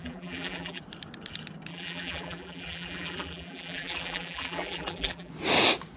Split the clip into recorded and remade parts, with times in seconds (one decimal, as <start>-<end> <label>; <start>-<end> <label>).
0.0-0.8 remade; 0.8-1.7 recorded; 1.7-5.3 remade; 5.3-6.0 recorded